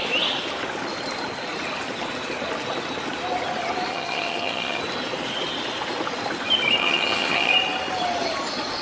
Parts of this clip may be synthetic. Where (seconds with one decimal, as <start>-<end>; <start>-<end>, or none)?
3.9-4.8; 6.8-7.5